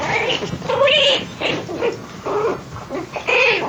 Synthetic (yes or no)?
yes